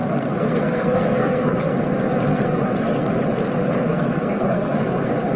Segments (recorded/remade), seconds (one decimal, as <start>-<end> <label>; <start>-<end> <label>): 0.0-1.9 remade; 1.9-2.3 recorded; 2.3-3.2 remade; 3.2-3.6 recorded; 3.6-5.4 remade